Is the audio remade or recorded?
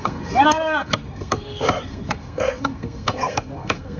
remade